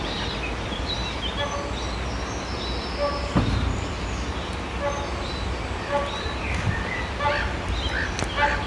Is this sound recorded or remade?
recorded